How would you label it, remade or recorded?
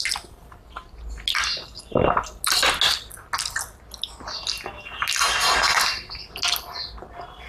recorded